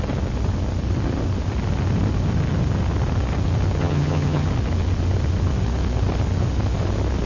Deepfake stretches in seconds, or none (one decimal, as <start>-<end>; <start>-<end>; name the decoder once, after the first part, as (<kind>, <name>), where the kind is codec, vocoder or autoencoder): 3.8-4.5 (vocoder, HiFi-GAN)